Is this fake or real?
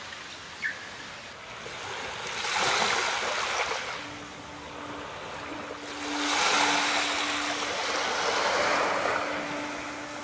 real